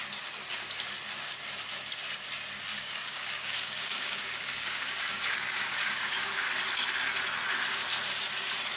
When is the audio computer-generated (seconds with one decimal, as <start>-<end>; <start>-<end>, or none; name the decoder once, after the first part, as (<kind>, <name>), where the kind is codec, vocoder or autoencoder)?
2.7-6.6 (codec, DAC)